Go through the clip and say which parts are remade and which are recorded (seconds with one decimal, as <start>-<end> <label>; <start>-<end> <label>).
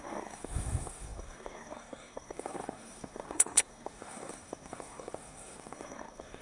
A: 0.0-6.4 remade